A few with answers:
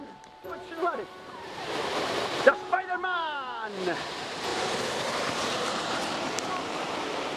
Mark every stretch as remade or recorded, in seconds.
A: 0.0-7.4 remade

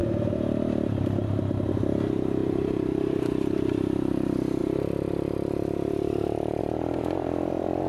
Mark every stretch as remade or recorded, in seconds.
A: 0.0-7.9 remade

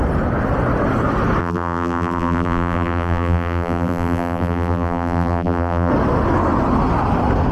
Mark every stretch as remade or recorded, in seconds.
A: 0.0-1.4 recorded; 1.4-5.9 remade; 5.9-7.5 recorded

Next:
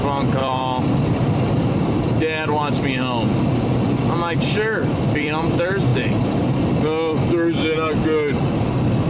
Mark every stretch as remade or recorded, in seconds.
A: 0.0-0.4 recorded; 0.4-1.7 remade; 1.7-4.8 recorded; 4.8-5.5 remade; 5.5-9.1 recorded